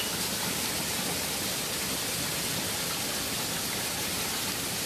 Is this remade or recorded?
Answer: recorded